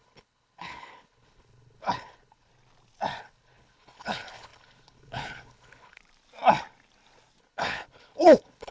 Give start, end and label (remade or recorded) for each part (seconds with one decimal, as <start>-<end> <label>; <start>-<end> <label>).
0.0-2.5 remade; 2.5-3.2 recorded; 3.2-6.0 remade; 6.0-7.4 recorded; 7.4-8.7 remade

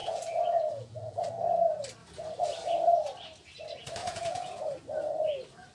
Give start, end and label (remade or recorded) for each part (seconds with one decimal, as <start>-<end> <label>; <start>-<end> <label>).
0.0-1.3 remade; 1.3-4.0 recorded; 4.0-4.6 remade; 4.6-5.7 recorded

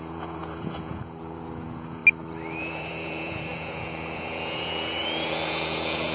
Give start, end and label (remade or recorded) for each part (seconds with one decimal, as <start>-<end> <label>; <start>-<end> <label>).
0.0-2.0 remade; 2.0-2.6 recorded; 2.6-6.1 remade

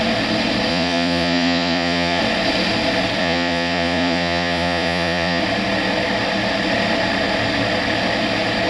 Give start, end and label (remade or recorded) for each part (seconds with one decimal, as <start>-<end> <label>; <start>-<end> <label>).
0.0-0.7 recorded; 0.7-2.2 remade; 2.2-3.2 recorded; 3.2-5.4 remade; 5.4-8.7 recorded

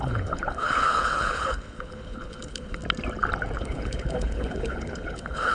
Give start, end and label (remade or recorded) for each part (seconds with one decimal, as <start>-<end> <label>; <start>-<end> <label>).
0.0-2.8 remade; 2.8-3.6 recorded; 3.6-5.5 remade